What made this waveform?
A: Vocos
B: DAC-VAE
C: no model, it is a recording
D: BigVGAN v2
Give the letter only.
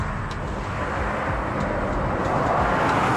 C